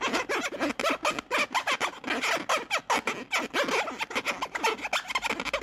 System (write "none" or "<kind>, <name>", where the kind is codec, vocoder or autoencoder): none